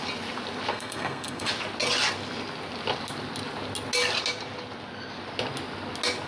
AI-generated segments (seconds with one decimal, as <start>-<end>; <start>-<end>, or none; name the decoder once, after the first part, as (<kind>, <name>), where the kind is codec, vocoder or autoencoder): 0.7-1.5 (codec, SNAC)